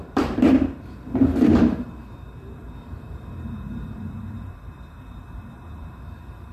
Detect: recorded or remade remade